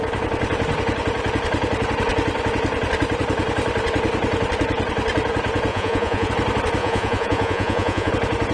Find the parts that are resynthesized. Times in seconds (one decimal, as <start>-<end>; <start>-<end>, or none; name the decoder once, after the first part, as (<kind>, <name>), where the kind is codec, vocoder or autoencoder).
5.7-6.3 (vocoder, Vocos); 6.8-8.1